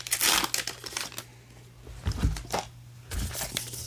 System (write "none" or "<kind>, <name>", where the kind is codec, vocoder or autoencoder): none